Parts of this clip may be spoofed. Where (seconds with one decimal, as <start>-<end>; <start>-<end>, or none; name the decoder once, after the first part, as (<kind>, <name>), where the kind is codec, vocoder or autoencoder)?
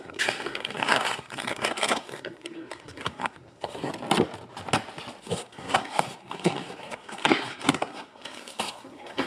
0.0-3.9 (codec, SNAC); 5.2-9.3